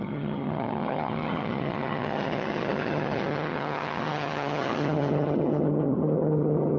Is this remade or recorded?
remade